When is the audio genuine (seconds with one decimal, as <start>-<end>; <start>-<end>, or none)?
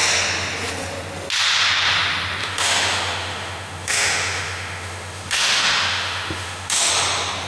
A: 0.0-2.4; 6.9-7.5